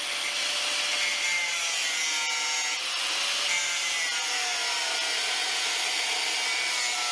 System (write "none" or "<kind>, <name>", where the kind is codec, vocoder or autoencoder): none